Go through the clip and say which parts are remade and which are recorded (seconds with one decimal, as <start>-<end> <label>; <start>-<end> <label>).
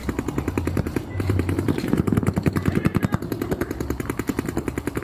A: 0.0-3.0 remade; 3.0-5.0 recorded